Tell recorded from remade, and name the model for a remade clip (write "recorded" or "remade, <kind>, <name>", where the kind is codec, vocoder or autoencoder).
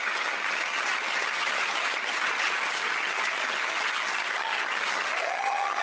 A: remade, vocoder, HiFi-GAN